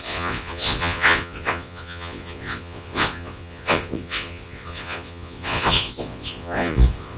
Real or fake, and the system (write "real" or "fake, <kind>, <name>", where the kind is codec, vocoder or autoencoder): fake, vocoder, Vocos